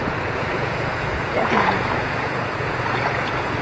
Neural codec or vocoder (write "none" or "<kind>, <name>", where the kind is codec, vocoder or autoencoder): vocoder, Vocos